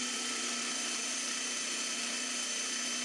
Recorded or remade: remade